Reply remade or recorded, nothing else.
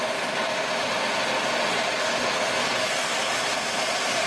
recorded